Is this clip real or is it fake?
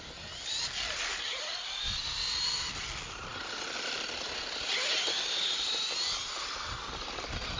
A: real